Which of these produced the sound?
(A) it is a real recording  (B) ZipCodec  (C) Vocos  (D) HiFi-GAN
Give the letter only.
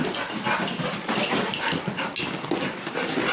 A